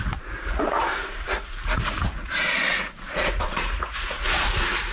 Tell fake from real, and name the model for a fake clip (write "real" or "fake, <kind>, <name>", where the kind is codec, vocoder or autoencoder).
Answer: fake, vocoder, Vocos